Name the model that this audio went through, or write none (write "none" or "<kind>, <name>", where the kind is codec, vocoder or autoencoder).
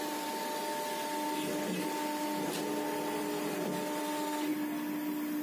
none